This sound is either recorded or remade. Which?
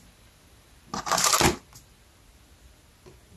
recorded